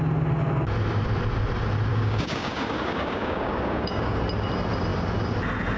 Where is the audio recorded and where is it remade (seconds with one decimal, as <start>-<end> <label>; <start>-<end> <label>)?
0.0-1.9 recorded; 1.9-4.2 remade; 4.2-5.8 recorded